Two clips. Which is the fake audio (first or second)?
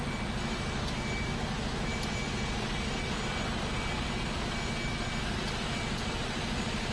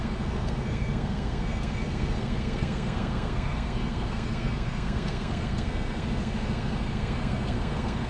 second